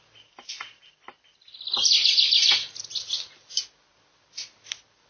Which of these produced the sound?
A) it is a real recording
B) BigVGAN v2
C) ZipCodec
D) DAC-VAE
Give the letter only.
A